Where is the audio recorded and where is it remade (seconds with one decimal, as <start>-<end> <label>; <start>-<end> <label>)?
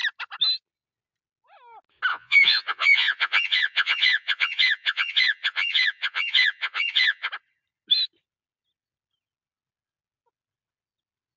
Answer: 0.0-2.1 recorded; 2.1-7.3 remade; 7.3-11.4 recorded